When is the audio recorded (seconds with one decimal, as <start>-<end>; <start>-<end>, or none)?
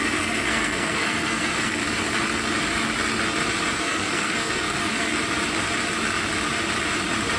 1.8-3.7; 5.1-7.4